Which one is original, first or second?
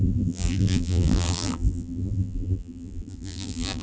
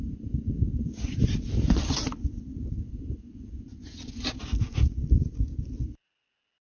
second